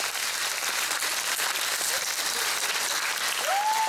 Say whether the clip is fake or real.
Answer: real